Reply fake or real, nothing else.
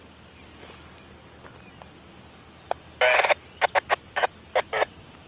real